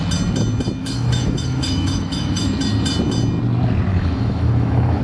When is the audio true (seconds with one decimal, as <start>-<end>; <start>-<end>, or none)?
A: 0.0-0.8; 2.4-3.9